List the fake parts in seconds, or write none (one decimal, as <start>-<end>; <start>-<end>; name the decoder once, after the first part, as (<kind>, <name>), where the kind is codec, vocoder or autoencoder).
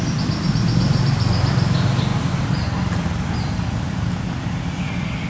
none